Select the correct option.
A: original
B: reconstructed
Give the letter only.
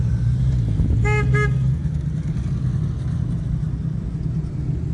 A